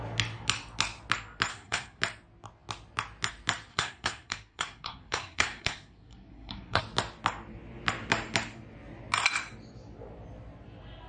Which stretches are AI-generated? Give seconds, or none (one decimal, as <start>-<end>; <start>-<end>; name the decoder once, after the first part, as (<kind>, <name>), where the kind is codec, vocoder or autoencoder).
1.5-2.0 (codec, SNAC); 3.7-6.8